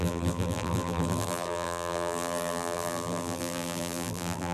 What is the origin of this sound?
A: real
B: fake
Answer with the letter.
B